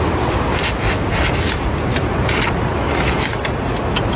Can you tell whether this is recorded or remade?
recorded